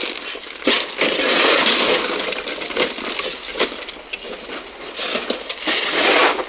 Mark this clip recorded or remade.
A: recorded